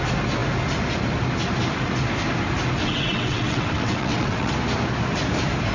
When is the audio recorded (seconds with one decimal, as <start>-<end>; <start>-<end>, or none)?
0.0-2.8; 4.5-5.7